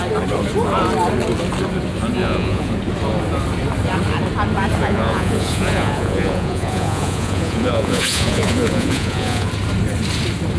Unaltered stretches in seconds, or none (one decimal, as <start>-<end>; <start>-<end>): 0.0-2.2; 2.7-4.8; 9.5-10.6